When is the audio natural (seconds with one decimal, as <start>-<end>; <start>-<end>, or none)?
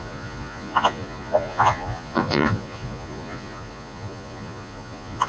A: none